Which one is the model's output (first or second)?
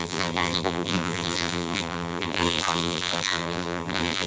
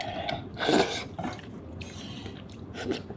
first